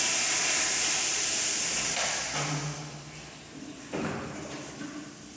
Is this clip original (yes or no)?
yes